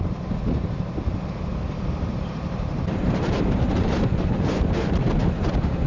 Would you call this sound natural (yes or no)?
no